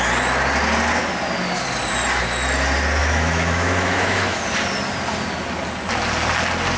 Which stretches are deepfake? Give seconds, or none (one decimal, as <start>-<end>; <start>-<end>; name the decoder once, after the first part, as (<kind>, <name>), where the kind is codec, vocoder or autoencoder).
3.0-4.4 (autoencoder, DAC-VAE)